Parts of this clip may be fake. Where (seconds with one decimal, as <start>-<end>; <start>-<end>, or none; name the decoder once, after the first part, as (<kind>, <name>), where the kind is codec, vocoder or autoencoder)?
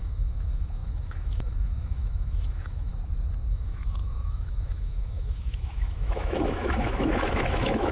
0.0-2.9 (autoencoder, DAC-VAE); 3.5-7.9